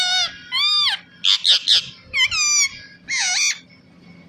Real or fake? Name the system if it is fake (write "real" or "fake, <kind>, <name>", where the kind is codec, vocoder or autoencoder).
real